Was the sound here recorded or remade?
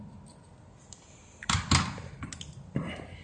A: recorded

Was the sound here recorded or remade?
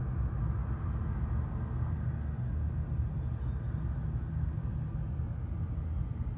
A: recorded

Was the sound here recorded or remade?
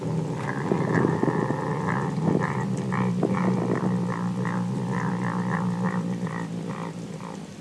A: recorded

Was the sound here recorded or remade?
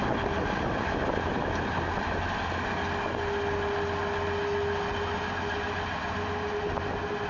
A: recorded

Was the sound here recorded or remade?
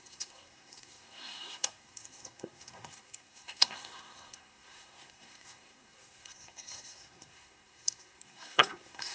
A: remade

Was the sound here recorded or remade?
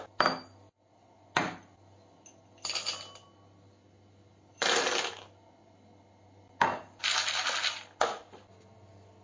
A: recorded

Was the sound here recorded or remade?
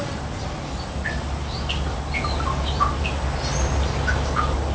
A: recorded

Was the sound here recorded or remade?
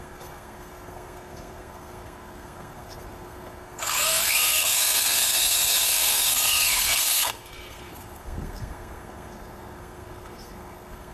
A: remade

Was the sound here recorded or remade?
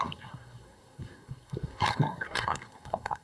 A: remade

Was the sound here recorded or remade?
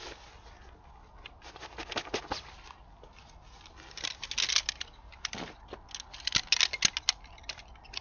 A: recorded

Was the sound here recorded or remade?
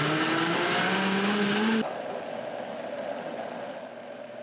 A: recorded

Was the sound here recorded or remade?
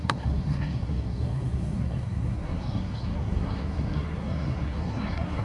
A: remade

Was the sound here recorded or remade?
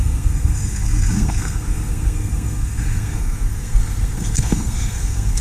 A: remade